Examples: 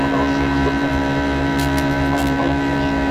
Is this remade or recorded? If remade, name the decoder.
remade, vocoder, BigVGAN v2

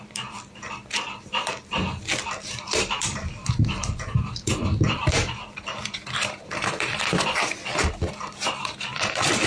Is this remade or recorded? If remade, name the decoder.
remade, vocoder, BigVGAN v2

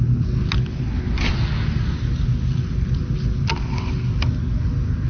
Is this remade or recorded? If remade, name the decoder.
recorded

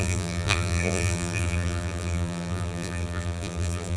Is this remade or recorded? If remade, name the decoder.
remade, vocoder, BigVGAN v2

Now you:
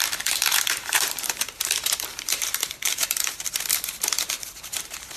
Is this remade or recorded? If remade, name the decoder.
remade, vocoder, BigVGAN v2